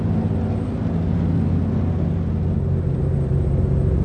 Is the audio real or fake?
real